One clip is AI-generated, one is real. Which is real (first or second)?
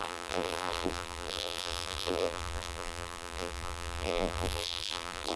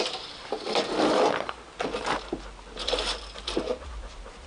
second